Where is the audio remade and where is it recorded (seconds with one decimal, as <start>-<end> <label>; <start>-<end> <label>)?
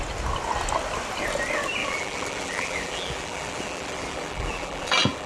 0.0-1.8 recorded; 1.8-5.3 remade